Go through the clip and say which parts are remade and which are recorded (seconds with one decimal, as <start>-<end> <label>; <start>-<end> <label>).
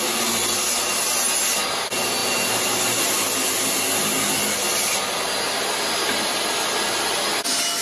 0.0-7.8 recorded